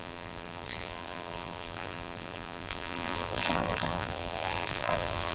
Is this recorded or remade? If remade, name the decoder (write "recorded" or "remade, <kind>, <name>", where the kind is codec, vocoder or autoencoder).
remade, vocoder, BigVGAN v2